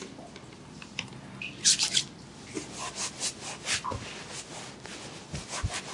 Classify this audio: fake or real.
real